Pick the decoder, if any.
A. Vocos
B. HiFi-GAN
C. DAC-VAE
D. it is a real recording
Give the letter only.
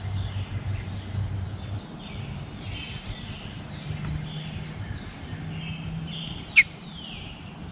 D